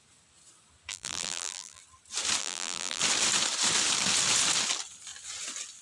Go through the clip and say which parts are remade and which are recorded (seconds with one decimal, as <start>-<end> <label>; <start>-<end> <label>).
0.0-0.9 recorded; 0.9-1.8 remade; 1.8-2.4 recorded; 2.4-3.0 remade; 3.0-5.8 recorded